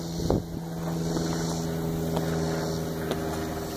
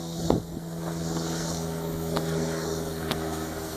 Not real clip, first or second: second